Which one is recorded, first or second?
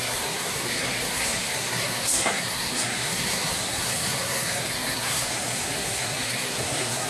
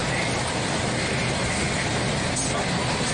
second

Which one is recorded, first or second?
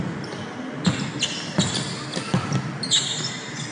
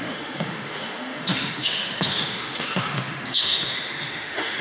first